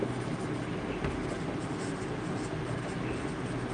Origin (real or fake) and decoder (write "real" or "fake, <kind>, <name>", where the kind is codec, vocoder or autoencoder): real